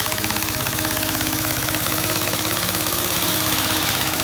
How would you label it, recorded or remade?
remade